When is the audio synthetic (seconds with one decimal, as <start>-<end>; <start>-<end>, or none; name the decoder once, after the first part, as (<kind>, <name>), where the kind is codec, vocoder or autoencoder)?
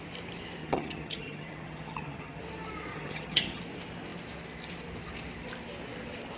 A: 0.6-2.4 (vocoder, HiFi-GAN); 2.9-3.6